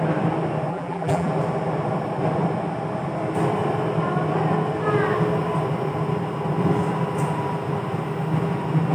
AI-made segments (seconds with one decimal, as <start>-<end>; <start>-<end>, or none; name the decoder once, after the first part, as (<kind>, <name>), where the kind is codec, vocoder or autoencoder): 0.7-1.3 (vocoder, BigVGAN v2)